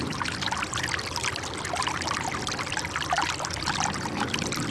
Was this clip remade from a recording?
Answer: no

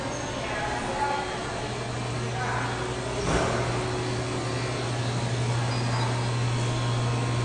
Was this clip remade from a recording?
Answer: no